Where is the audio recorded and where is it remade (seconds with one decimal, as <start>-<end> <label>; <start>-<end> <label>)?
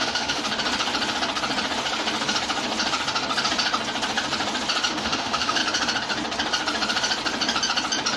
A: 0.0-0.4 remade; 0.4-4.9 recorded; 4.9-5.6 remade; 5.6-8.2 recorded